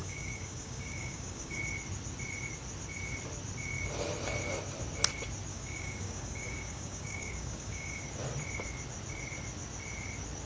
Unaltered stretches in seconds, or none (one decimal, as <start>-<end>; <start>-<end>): 1.6-5.5; 8.0-10.5

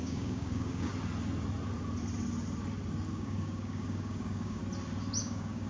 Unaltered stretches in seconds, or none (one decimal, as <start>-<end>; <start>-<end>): 0.9-3.1; 4.6-5.2

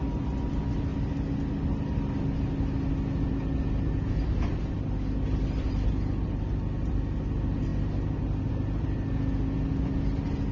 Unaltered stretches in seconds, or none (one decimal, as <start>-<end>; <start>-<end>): 0.0-10.5

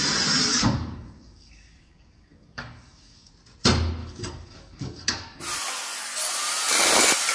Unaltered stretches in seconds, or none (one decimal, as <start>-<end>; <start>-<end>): 0.0-0.5; 3.3-4.0; 5.4-7.3